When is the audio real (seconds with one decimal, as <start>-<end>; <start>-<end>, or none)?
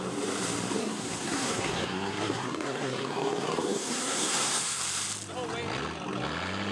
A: 0.0-0.8; 4.8-6.7